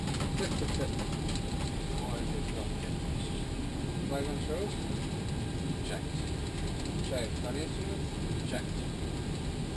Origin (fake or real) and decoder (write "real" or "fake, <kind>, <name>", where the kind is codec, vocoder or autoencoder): real